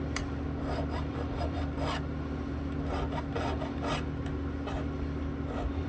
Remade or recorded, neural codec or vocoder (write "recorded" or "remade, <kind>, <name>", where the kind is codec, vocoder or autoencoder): recorded